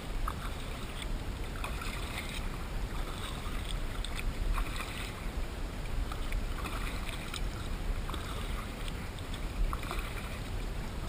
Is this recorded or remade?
remade